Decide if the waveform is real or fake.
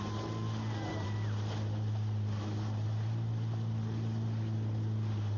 real